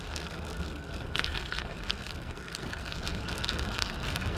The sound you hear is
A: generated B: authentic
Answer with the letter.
A